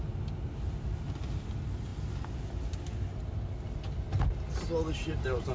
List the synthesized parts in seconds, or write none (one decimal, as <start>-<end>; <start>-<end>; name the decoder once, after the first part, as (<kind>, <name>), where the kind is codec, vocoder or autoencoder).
4.9-5.5 (vocoder, BigVGAN v2)